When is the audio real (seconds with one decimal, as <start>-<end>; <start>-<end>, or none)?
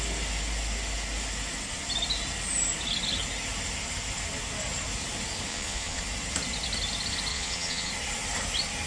0.0-5.5; 6.0-7.3; 7.9-8.9